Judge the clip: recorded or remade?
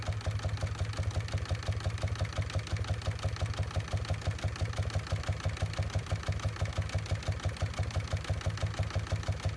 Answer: recorded